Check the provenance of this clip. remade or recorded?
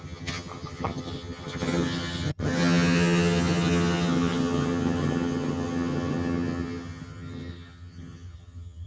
remade